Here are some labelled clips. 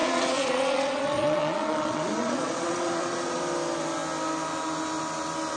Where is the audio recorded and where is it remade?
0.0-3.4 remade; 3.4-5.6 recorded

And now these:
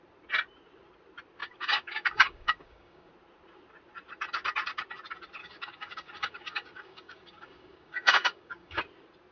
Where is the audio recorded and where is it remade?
0.0-1.4 recorded; 1.4-3.1 remade; 3.1-5.4 recorded; 5.4-8.8 remade; 8.8-9.3 recorded

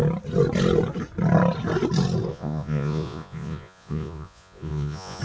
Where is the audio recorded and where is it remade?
0.0-2.3 recorded; 2.3-5.2 remade

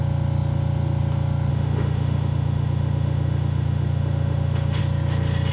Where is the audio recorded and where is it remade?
0.0-1.5 recorded; 1.5-4.8 remade; 4.8-5.5 recorded

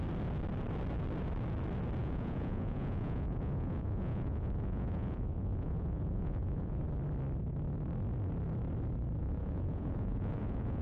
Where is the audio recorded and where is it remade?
0.0-2.0 recorded; 2.0-6.8 remade; 6.8-9.2 recorded; 9.2-10.8 remade